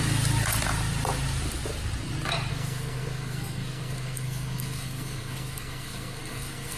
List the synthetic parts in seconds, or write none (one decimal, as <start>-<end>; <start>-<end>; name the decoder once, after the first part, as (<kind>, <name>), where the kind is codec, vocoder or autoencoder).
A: 2.5-6.8 (codec, SNAC)